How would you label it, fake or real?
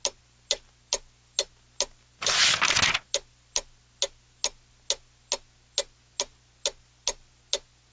real